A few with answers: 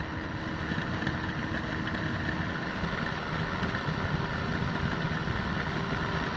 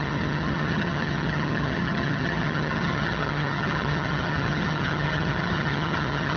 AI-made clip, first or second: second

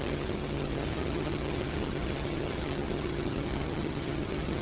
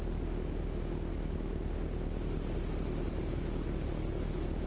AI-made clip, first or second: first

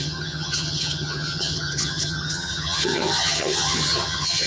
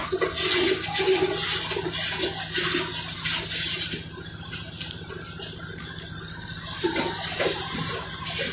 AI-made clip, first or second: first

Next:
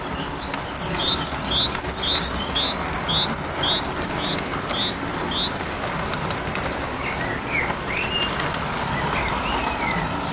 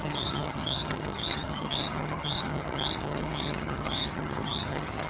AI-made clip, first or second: second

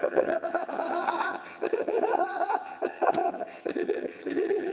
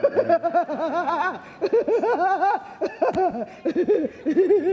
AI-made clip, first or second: first